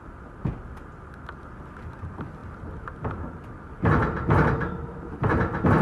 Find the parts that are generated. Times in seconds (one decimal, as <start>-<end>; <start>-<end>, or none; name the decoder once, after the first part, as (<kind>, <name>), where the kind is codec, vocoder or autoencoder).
none